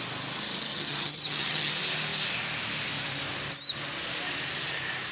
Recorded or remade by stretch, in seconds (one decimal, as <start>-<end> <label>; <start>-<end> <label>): 0.0-0.7 recorded; 0.7-1.7 remade; 1.7-5.1 recorded